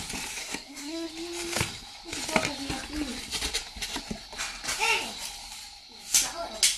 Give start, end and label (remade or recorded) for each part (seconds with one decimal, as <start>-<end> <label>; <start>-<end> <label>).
0.0-0.4 recorded; 0.4-1.1 remade; 1.1-6.8 recorded